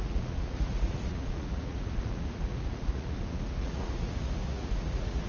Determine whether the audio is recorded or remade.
remade